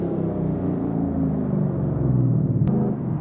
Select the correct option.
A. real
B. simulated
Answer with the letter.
A